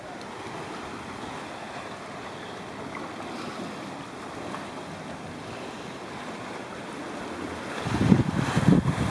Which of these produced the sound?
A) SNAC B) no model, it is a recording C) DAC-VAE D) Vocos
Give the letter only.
B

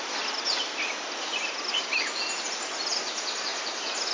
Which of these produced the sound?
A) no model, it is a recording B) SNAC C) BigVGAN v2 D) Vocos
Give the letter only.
A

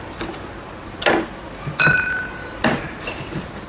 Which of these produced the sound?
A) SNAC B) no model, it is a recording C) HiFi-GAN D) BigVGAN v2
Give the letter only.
B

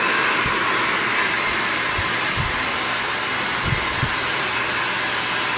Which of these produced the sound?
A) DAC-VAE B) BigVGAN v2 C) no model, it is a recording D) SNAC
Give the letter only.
C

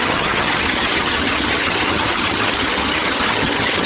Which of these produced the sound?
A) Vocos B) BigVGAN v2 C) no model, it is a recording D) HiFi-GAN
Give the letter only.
D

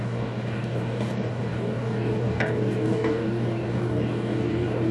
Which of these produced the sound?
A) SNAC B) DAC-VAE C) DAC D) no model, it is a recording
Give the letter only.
C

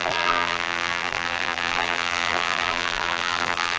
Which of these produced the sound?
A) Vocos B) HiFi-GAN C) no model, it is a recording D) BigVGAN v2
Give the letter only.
D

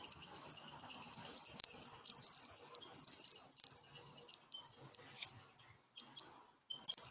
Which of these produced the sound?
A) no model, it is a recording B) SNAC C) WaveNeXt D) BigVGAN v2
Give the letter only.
A